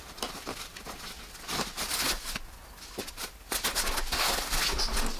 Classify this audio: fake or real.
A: real